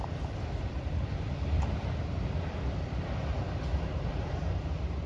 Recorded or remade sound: remade